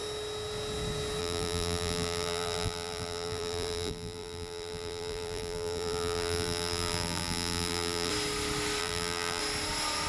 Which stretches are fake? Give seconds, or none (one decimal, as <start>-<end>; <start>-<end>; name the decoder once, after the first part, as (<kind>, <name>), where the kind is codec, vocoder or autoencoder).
1.2-8.1 (vocoder, BigVGAN v2); 8.8-9.4